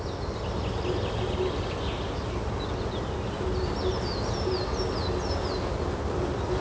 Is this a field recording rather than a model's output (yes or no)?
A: yes